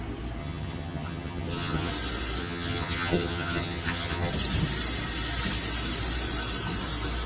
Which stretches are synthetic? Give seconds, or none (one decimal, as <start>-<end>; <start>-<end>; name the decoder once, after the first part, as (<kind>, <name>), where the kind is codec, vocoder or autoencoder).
0.4-1.9 (vocoder, HiFi-GAN); 2.4-4.3